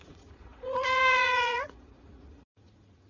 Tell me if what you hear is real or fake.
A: fake